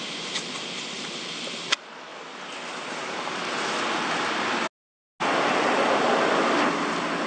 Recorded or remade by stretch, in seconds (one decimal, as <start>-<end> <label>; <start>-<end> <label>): 0.0-7.3 recorded